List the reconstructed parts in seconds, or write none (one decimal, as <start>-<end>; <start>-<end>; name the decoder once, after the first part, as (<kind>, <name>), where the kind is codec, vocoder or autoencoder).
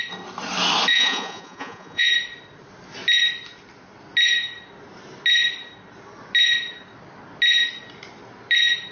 0.9-2.1 (vocoder, Vocos)